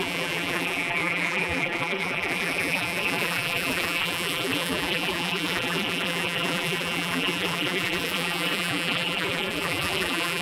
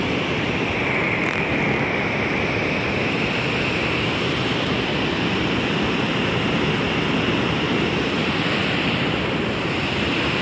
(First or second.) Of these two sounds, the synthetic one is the first